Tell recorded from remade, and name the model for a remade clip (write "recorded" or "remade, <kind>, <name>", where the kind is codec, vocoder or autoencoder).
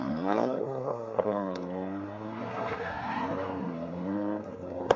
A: remade, codec, SNAC